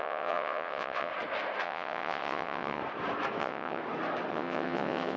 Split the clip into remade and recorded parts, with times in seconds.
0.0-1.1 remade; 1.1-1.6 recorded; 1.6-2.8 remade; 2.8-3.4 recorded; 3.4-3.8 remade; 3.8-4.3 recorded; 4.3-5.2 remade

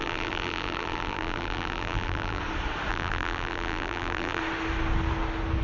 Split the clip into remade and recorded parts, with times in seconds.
0.0-2.4 remade; 2.4-2.9 recorded; 2.9-4.4 remade; 4.4-5.6 recorded

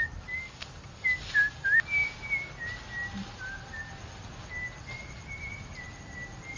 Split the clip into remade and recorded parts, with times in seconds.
0.0-6.6 recorded

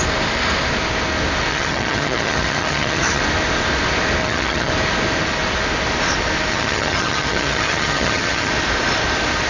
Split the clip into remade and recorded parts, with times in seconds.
0.0-1.5 recorded; 1.5-3.2 remade; 3.2-4.2 recorded; 4.2-4.7 remade; 4.7-6.5 recorded; 6.5-8.5 remade; 8.5-9.5 recorded

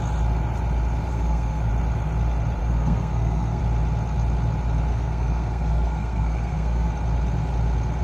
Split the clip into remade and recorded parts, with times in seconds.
0.0-1.1 recorded; 1.1-1.7 remade; 1.7-2.6 recorded; 2.6-3.6 remade; 3.6-4.9 recorded; 4.9-6.9 remade; 6.9-8.0 recorded